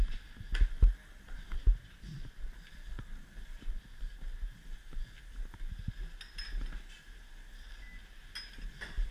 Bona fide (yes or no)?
yes